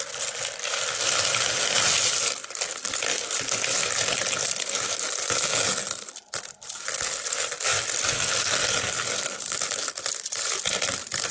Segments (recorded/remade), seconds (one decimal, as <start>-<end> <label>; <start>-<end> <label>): 0.0-11.3 recorded